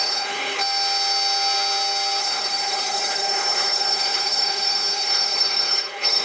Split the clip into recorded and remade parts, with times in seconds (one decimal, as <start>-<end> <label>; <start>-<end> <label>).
0.0-0.6 remade; 0.6-2.2 recorded; 2.2-6.2 remade